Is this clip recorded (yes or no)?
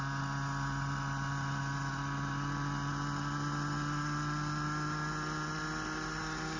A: yes